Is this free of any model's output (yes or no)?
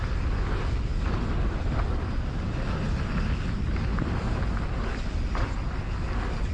yes